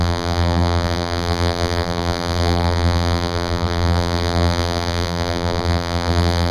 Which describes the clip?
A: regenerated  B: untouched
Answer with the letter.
A